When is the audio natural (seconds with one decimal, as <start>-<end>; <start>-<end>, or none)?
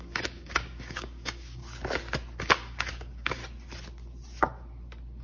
1.6-2.4; 3.4-5.2